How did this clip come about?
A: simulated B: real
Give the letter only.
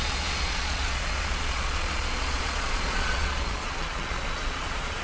A